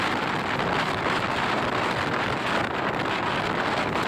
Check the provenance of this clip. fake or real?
real